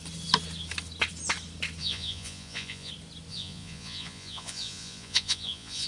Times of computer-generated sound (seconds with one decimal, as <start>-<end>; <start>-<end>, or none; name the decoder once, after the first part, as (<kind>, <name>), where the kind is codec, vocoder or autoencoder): 1.8-2.9 (vocoder, Vocos); 3.3-5.9